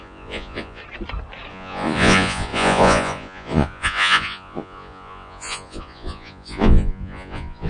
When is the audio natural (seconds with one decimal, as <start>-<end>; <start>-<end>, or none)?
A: 0.8-1.5